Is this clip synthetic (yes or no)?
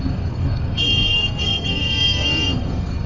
yes